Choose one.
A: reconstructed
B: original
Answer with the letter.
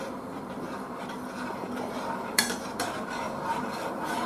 A